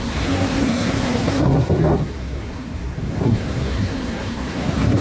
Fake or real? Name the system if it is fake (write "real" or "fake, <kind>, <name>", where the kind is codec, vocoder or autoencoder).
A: fake, codec, SNAC